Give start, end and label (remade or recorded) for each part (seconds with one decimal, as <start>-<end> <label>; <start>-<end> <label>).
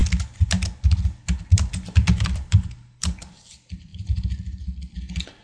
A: 0.0-2.0 recorded; 2.0-3.2 remade; 3.2-5.4 recorded